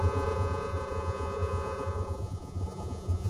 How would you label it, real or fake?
fake